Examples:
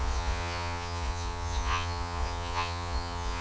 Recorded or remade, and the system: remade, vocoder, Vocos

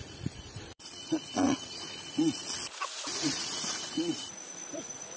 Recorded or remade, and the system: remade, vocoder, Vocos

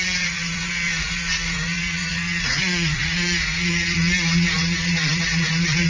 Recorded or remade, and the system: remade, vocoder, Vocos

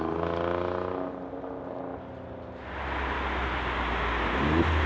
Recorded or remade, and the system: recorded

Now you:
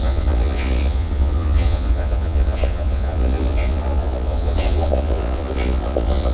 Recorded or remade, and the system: remade, vocoder, Vocos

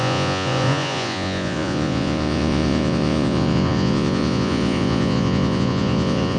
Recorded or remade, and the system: remade, vocoder, Vocos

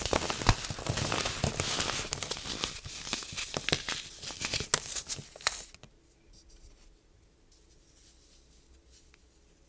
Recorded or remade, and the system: recorded